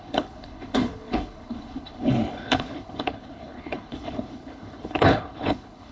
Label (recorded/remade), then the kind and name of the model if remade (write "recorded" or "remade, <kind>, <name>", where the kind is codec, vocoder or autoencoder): remade, codec, HILCodec